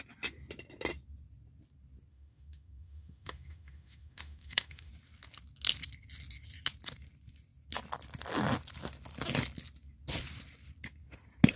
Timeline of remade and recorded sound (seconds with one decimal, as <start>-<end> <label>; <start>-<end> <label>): 0.0-2.1 recorded; 2.1-4.9 remade; 4.9-11.6 recorded